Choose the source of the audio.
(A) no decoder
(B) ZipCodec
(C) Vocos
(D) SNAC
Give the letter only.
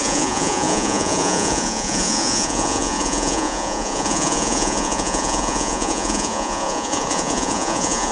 C